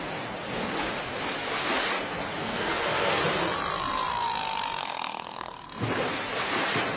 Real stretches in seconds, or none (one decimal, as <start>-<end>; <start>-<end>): 0.0-2.4; 3.2-4.8; 5.5-7.0